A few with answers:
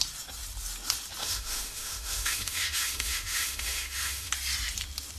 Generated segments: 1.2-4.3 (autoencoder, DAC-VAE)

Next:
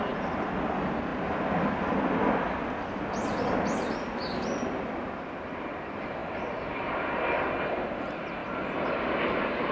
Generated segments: none

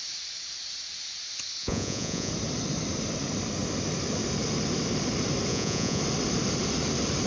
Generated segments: 1.6-2.3 (vocoder, Vocos); 5.5-6.0